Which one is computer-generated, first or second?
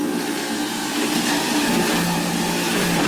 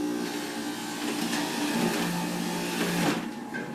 first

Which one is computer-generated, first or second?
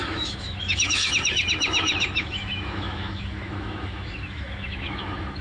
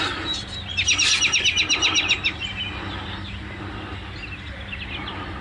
first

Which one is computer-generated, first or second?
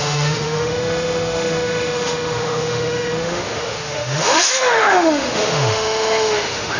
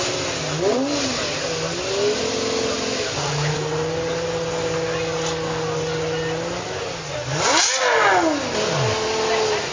first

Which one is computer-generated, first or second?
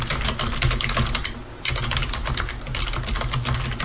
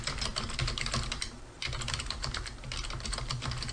second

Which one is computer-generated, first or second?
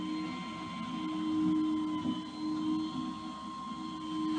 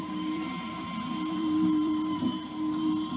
second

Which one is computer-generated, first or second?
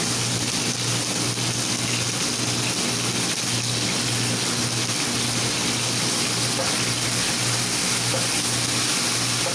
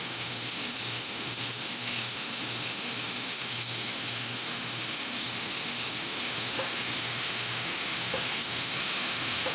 second